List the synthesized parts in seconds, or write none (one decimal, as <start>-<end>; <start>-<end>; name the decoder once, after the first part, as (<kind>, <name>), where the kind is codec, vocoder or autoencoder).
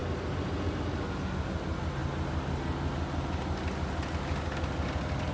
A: none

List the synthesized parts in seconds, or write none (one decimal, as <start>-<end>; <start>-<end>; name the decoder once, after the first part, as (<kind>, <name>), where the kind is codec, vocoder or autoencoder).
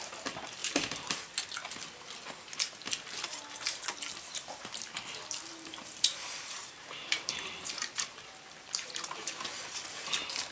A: 0.6-1.2 (vocoder, BigVGAN v2); 5.5-9.8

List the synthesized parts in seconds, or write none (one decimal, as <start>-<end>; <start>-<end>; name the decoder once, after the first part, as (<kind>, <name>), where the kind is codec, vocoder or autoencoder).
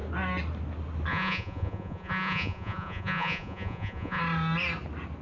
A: 1.1-4.2 (vocoder, Vocos)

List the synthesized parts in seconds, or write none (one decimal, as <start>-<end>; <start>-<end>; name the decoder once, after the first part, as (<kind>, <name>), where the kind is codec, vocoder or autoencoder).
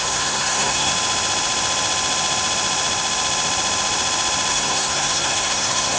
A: 0.0-0.9 (codec, SNAC); 4.5-6.0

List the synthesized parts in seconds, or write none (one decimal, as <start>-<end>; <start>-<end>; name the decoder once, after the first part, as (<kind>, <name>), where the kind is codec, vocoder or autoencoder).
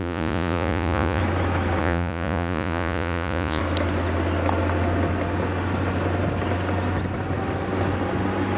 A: 0.0-1.2 (vocoder, Vocos); 1.8-3.6